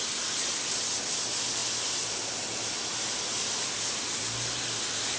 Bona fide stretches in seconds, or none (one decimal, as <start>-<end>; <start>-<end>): 0.0-5.2